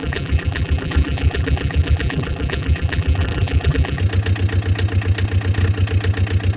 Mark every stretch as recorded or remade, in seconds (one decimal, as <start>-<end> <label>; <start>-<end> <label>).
0.0-4.0 remade; 4.0-6.6 recorded